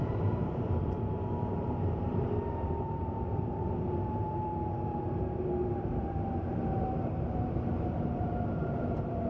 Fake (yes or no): yes